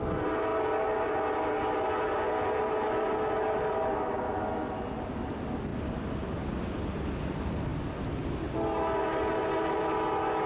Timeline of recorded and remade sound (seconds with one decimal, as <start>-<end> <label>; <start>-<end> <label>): 0.0-10.5 recorded

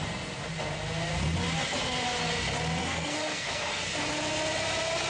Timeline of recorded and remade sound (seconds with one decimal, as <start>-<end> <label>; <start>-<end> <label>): 0.0-2.8 recorded; 2.8-3.8 remade; 3.8-5.1 recorded

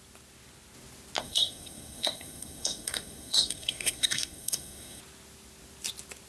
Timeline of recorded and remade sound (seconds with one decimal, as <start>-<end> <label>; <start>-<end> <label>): 0.0-1.2 recorded; 1.2-5.0 remade; 5.0-6.3 recorded